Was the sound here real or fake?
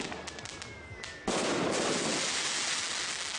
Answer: real